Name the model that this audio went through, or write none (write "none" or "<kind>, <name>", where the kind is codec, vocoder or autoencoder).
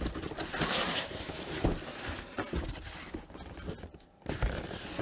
none